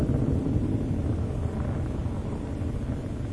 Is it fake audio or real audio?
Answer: real